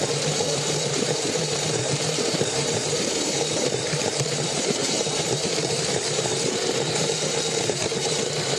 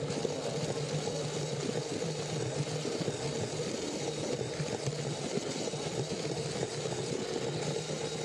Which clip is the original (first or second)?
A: second